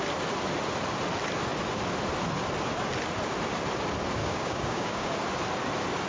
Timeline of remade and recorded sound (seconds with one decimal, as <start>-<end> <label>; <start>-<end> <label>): 0.0-4.2 recorded; 4.2-5.1 remade; 5.1-6.1 recorded